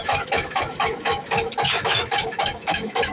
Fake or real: fake